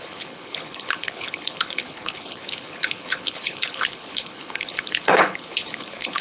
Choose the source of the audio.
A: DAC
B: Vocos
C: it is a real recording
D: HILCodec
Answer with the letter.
D